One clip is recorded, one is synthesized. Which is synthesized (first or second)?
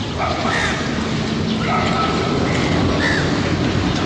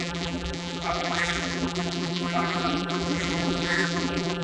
second